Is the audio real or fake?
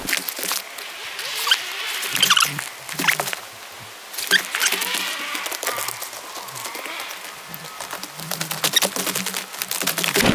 real